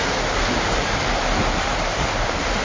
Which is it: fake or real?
real